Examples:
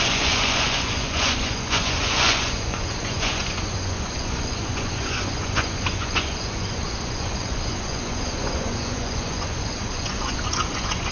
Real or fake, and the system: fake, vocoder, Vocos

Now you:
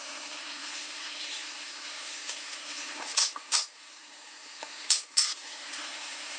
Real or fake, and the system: fake, codec, SNAC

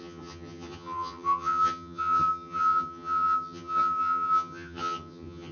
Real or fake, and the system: fake, vocoder, HiFi-GAN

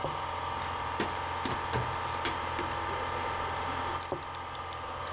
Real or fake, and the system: real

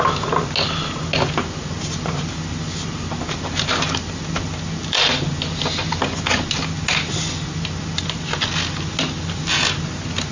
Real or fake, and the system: real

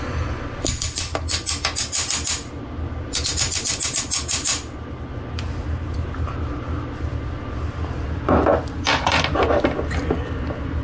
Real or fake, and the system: real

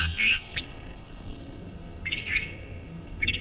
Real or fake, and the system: fake, codec, SNAC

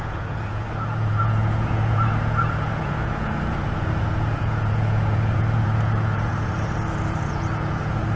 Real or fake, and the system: fake, vocoder, Vocos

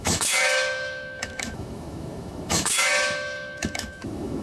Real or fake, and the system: fake, autoencoder, DAC-VAE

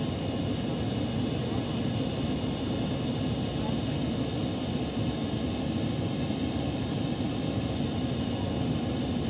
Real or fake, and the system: real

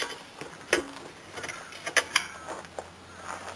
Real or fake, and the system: real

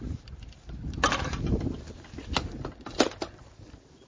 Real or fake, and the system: real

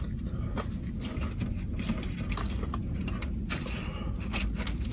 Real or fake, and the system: real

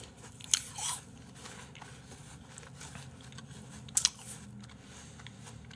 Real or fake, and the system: real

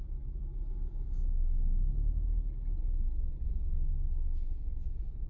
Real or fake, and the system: real